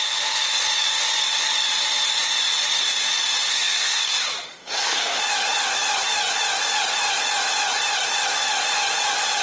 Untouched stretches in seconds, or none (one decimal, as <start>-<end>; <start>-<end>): 0.0-3.5; 4.0-4.5; 5.2-9.4